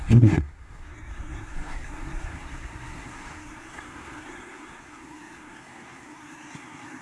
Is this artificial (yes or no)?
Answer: yes